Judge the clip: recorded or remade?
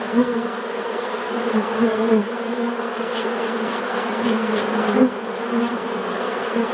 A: remade